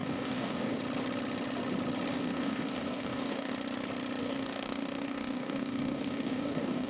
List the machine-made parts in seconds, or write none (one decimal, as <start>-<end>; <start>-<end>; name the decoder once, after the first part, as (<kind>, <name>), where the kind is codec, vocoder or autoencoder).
0.0-0.8 (codec, DAC); 2.2-3.5; 4.2-6.9